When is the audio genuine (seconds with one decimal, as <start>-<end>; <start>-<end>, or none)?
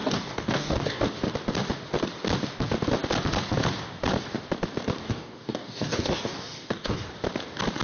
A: 1.0-5.0; 7.1-7.8